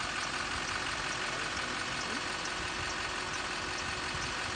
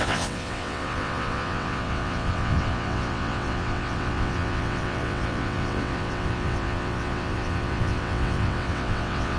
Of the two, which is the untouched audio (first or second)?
first